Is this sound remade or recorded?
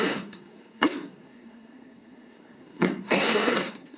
remade